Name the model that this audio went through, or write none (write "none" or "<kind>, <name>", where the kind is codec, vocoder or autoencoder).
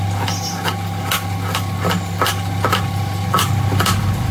none